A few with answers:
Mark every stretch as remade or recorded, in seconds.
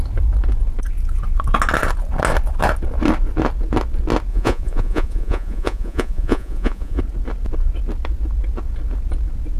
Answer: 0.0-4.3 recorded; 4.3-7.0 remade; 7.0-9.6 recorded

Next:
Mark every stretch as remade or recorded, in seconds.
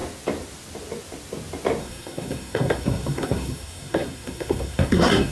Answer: 0.0-1.8 recorded; 1.8-5.3 remade